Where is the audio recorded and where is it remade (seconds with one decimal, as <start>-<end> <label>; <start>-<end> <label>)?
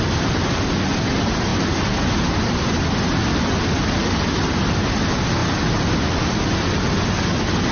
0.0-7.7 recorded